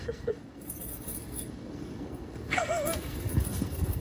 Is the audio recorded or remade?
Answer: remade